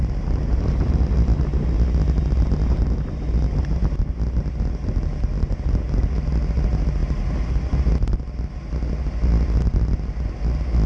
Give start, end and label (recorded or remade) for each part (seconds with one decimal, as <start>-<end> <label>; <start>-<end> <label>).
0.0-10.9 recorded